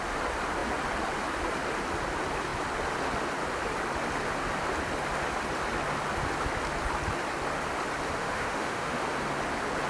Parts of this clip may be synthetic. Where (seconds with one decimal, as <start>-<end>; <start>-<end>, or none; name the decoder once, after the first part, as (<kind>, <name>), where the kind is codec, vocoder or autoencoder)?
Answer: 8.2-9.0 (autoencoder, DAC-VAE)